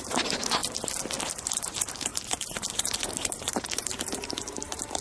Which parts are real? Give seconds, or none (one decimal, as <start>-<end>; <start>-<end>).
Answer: 0.6-1.3